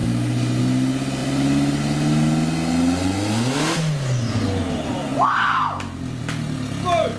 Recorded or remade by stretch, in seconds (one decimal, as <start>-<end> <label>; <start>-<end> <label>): 0.0-7.2 recorded